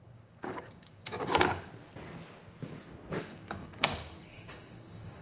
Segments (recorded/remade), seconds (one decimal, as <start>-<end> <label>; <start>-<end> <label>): 0.0-1.7 remade; 1.7-3.2 recorded; 3.2-5.2 remade